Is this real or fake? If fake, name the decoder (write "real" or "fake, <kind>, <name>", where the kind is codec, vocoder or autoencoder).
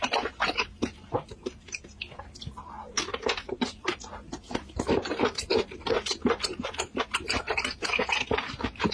fake, vocoder, BigVGAN v2